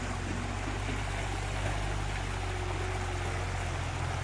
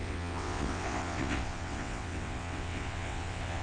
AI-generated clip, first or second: second